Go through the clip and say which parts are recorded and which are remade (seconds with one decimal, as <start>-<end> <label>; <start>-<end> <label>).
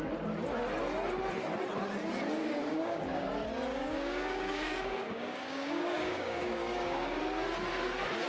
0.0-2.4 recorded; 2.4-3.3 remade; 3.3-3.7 recorded; 3.7-7.2 remade; 7.2-8.3 recorded